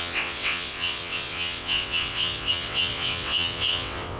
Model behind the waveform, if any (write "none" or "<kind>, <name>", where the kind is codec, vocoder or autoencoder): vocoder, WaveNeXt